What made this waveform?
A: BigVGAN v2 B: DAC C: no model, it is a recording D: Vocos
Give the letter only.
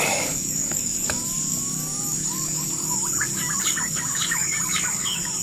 B